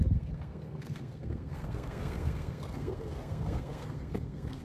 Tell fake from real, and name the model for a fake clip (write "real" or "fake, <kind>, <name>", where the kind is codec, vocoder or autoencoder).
fake, codec, SNAC